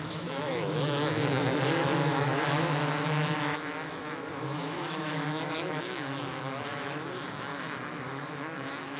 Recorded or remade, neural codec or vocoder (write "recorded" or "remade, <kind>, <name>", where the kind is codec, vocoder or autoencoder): remade, autoencoder, DAC-VAE